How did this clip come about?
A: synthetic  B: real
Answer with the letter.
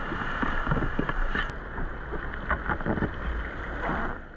B